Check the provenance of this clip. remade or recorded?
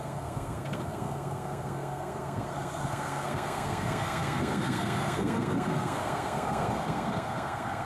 remade